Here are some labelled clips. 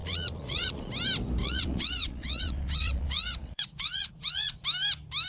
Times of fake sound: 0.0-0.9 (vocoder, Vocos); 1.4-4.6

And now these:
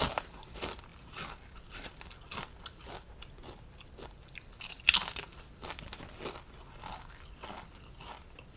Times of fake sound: none